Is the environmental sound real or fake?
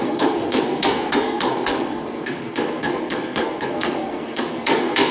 fake